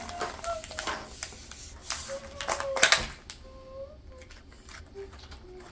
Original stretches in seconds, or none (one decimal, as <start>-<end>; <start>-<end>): 0.0-5.7

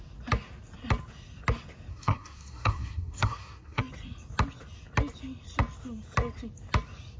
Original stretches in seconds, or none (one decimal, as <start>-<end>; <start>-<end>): 0.0-1.9; 3.8-7.2

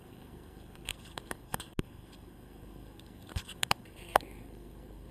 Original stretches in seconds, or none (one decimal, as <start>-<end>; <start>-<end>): none

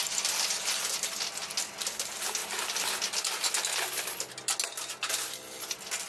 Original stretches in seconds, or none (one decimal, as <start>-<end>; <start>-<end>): 0.0-6.1

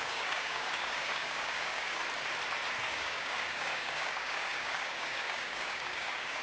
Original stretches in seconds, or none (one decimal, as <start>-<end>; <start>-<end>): 2.0-2.8

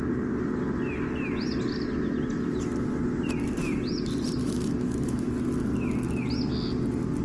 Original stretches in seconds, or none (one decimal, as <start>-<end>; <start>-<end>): 0.0-4.4; 5.3-7.2